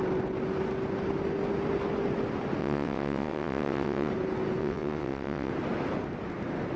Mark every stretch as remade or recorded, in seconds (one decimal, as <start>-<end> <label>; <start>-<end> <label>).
0.0-2.6 recorded; 2.6-4.1 remade; 4.1-4.6 recorded; 4.6-5.5 remade; 5.5-6.8 recorded